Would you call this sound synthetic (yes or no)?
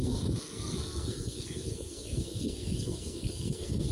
yes